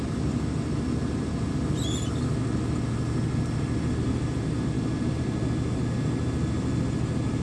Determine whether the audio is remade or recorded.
recorded